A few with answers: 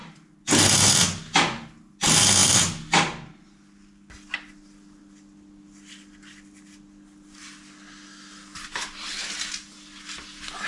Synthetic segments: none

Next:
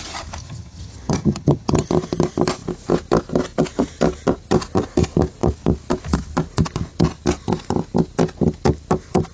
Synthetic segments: 0.4-1.9 (vocoder, HiFi-GAN)

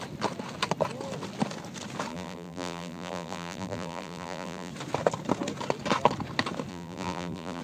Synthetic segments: 2.1-4.7 (vocoder, BigVGAN v2); 6.7-7.6

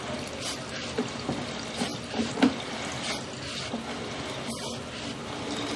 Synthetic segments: none

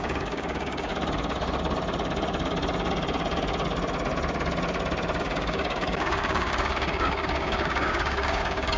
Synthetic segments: 0.0-0.9 (codec, DAC); 5.2-8.8

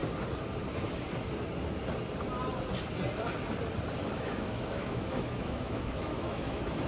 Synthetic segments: 4.1-6.9 (autoencoder, DAC-VAE)